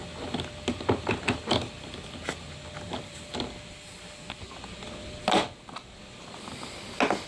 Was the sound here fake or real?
real